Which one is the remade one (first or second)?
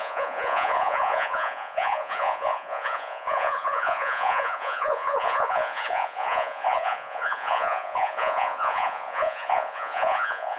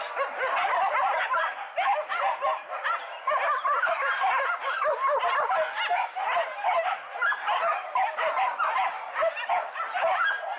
first